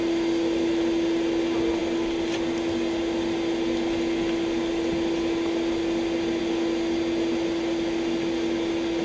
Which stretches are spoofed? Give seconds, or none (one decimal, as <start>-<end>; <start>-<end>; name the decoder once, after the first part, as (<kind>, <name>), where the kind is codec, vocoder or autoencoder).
none